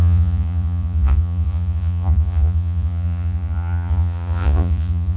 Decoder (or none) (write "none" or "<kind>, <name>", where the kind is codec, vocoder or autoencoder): vocoder, Vocos